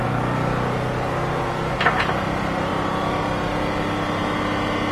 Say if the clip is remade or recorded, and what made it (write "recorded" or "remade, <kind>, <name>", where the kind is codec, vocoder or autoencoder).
recorded